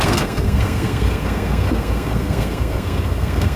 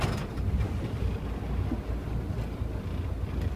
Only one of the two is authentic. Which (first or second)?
second